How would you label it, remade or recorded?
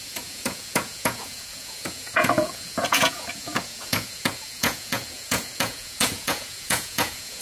remade